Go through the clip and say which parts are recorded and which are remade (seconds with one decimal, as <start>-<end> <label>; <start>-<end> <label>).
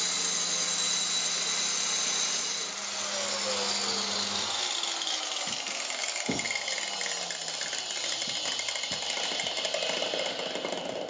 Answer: 0.0-11.1 recorded